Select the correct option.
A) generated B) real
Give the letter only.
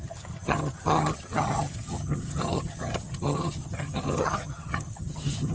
A